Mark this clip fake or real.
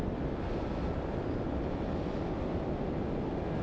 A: real